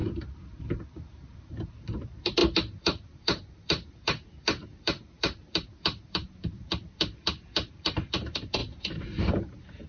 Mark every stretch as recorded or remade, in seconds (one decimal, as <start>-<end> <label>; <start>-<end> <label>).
0.0-0.6 recorded; 0.6-8.6 remade; 8.6-9.2 recorded; 9.2-9.9 remade